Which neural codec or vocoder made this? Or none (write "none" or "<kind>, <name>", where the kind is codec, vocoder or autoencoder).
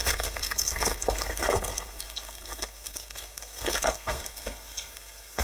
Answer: codec, SNAC